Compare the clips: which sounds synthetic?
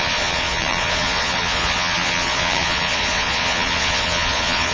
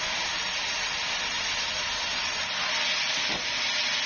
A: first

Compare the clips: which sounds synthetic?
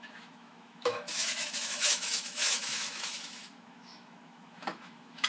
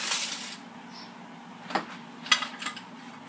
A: first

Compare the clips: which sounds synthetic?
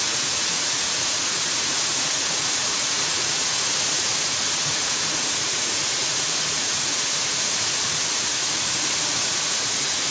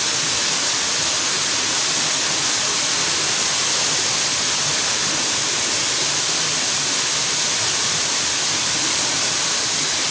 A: first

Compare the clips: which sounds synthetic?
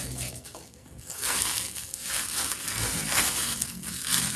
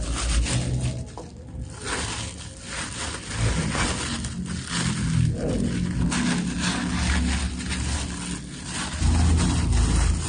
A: first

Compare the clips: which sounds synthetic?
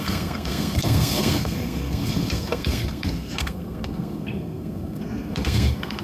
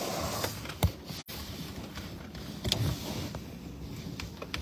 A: first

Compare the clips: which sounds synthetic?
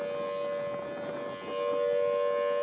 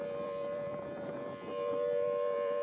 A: second